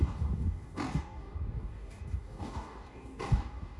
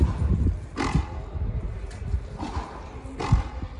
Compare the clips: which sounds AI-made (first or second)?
first